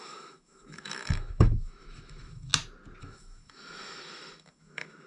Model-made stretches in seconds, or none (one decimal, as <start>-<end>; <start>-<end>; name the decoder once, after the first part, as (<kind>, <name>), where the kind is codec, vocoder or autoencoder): 0.0-2.5 (autoencoder, DAC-VAE); 3.0-5.1